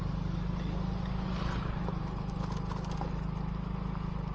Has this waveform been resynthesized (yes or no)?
no